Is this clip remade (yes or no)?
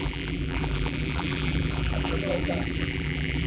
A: yes